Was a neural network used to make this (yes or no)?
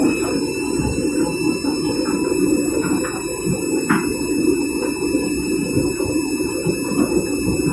no